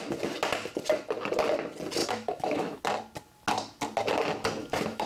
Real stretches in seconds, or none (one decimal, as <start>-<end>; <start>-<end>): 0.0-2.0; 2.8-4.6